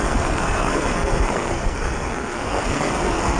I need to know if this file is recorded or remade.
remade